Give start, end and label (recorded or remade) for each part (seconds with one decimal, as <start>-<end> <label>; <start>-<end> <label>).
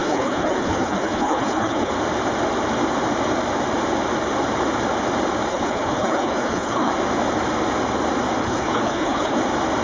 0.0-1.9 remade; 1.9-5.5 recorded; 5.5-6.9 remade; 6.9-8.4 recorded; 8.4-9.4 remade; 9.4-9.8 recorded